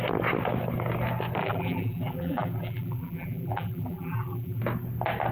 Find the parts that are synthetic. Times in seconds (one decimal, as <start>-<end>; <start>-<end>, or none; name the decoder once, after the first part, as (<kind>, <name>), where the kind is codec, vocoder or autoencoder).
1.4-4.6 (vocoder, BigVGAN v2)

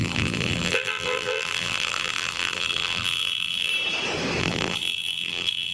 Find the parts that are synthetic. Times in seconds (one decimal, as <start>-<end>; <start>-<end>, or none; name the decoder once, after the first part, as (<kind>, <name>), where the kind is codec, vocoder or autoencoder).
0.0-3.7 (vocoder, BigVGAN v2); 4.4-5.7

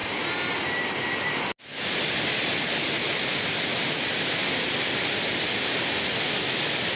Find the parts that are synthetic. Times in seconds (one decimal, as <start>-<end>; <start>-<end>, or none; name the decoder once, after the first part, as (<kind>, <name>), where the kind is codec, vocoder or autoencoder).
none

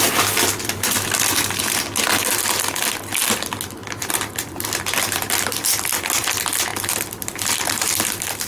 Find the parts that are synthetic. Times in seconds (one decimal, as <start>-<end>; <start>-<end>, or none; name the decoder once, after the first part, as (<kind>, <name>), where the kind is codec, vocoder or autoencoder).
3.8-6.3 (vocoder, BigVGAN v2); 6.7-8.5